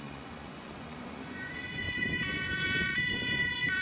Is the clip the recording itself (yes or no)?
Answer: no